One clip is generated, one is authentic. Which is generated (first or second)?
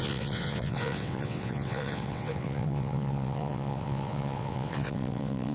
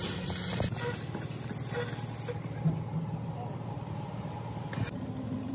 first